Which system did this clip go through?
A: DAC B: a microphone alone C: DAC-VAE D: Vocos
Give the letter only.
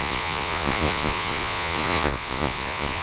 D